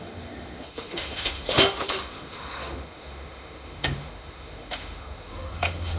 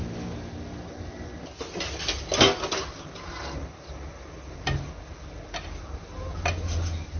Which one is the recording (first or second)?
second